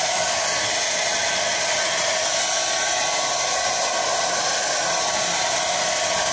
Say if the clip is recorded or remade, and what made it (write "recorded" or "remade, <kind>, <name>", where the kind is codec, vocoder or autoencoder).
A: recorded